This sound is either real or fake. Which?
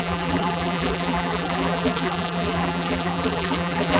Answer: fake